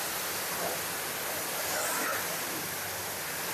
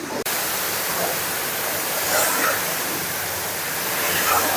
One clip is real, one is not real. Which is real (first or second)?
first